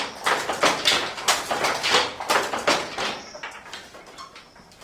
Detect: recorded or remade recorded